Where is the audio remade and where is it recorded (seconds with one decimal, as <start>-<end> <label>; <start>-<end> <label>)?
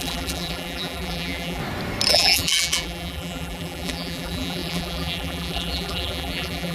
0.0-1.6 remade; 1.6-2.1 recorded; 2.1-6.7 remade